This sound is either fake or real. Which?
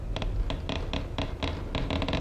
real